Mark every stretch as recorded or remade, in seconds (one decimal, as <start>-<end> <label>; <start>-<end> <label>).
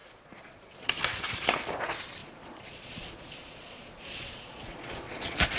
0.0-0.9 remade; 0.9-2.2 recorded; 2.2-5.6 remade